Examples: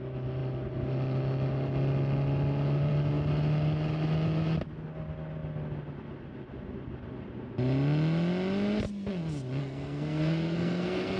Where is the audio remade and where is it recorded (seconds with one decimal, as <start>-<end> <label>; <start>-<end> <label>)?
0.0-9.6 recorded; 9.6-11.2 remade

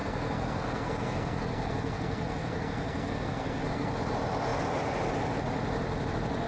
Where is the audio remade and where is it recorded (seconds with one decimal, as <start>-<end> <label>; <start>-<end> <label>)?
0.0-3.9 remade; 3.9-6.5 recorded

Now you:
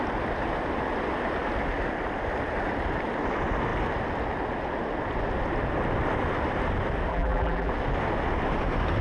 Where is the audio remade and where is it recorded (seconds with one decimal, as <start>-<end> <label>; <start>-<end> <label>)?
0.0-7.1 recorded; 7.1-7.7 remade; 7.7-9.0 recorded